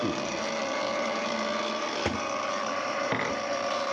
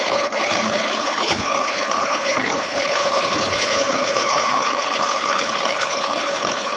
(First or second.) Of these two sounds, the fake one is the second